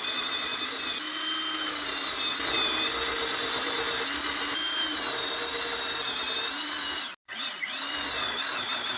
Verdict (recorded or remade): recorded